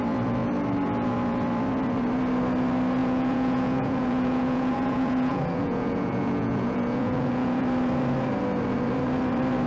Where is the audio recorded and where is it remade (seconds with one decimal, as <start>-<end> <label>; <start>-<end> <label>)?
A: 0.0-3.0 recorded; 3.0-7.6 remade; 7.6-9.7 recorded